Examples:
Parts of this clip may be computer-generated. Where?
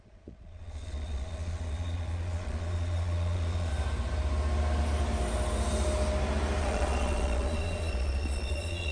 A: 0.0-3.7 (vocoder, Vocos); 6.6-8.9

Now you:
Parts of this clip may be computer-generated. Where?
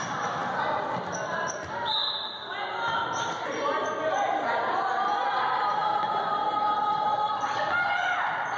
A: none